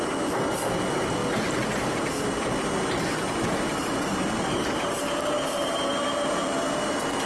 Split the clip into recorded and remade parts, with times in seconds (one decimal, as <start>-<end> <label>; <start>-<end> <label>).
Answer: 0.0-7.3 recorded